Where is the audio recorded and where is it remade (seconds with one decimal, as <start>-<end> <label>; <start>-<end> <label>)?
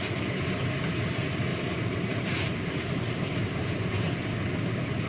0.0-1.5 recorded; 1.5-4.3 remade; 4.3-5.1 recorded